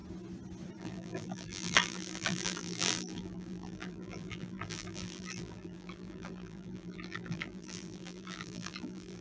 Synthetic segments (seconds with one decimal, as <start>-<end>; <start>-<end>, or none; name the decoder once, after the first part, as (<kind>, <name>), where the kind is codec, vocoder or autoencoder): 0.8-9.2 (vocoder, BigVGAN v2)

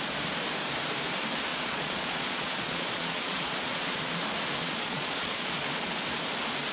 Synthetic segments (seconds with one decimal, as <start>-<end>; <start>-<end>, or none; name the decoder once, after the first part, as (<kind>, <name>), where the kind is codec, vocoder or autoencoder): 1.5-4.1 (vocoder, Vocos); 4.6-5.5

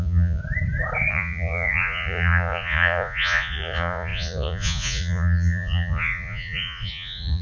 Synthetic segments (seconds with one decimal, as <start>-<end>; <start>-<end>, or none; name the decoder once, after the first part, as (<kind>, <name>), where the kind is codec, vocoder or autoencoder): 0.0-0.4 (vocoder, Vocos); 1.1-7.4